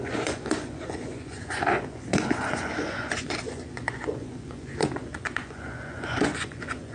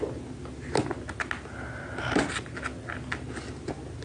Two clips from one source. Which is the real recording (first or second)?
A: second